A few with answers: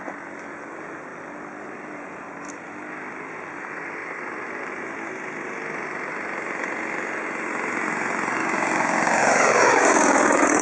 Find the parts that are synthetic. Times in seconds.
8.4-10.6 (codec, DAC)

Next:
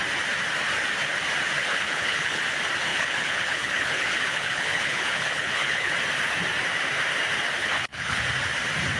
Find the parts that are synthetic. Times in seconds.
1.7-2.4 (codec, HILCodec); 2.9-5.9; 7.6-8.2

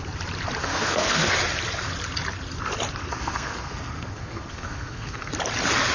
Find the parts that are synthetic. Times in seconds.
0.6-1.3 (codec, SNAC); 3.1-5.3

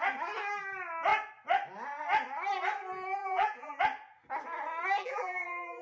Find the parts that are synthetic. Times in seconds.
3.2-3.8 (vocoder, BigVGAN v2); 5.0-5.8